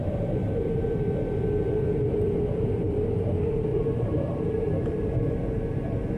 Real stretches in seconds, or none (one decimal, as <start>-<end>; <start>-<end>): 0.8-3.7; 5.0-6.2